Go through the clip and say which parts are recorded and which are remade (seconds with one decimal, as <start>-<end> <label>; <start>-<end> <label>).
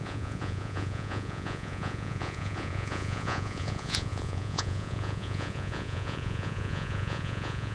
0.0-7.7 remade